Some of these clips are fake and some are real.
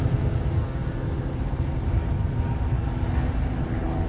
real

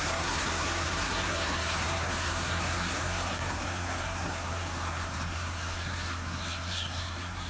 fake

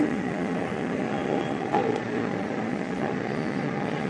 fake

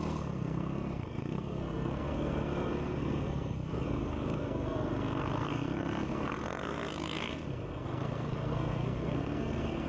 fake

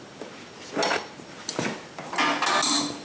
real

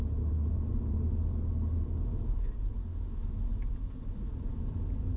real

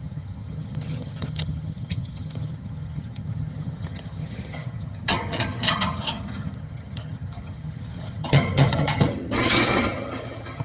fake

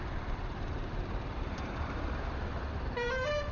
fake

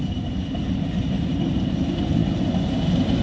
real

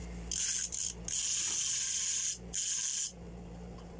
real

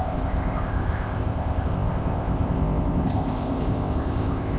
fake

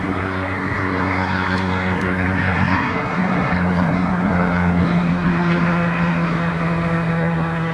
fake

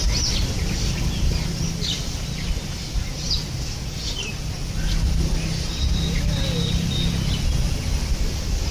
real